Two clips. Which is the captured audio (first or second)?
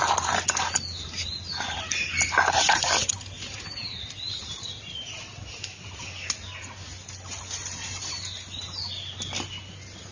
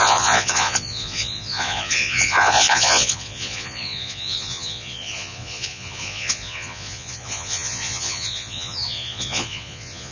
first